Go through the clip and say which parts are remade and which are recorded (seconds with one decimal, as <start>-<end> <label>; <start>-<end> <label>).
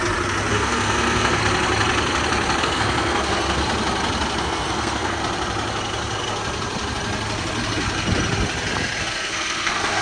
0.0-0.5 recorded; 0.5-1.4 remade; 1.4-2.6 recorded; 2.6-3.6 remade; 3.6-4.4 recorded; 4.4-5.2 remade; 5.2-9.0 recorded; 9.0-10.0 remade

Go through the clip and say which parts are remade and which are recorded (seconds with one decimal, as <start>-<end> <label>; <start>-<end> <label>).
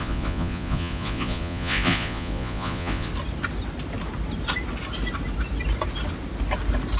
0.0-3.1 remade; 3.1-7.0 recorded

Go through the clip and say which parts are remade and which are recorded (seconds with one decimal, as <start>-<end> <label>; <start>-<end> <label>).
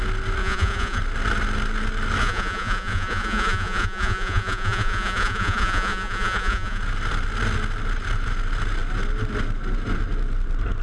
0.0-0.4 recorded; 0.4-1.0 remade; 1.0-2.2 recorded; 2.2-6.8 remade; 6.8-10.8 recorded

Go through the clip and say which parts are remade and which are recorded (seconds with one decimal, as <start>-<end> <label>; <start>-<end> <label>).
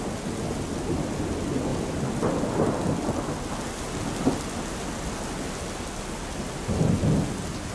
0.0-7.7 recorded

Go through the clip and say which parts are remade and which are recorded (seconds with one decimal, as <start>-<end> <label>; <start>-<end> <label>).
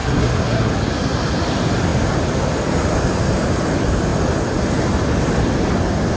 0.0-0.7 remade; 0.7-6.2 recorded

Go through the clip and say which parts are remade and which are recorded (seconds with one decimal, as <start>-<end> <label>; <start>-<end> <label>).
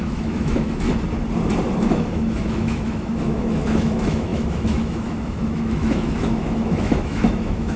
0.0-0.9 remade; 0.9-1.8 recorded; 1.8-7.8 remade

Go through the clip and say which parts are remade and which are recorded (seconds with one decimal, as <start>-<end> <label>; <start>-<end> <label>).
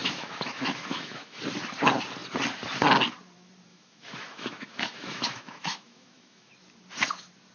0.0-1.4 remade; 1.4-3.7 recorded; 3.7-6.5 remade; 6.5-7.5 recorded